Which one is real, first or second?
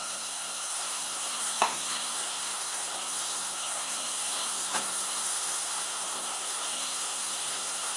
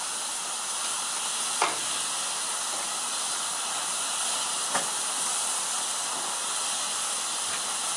second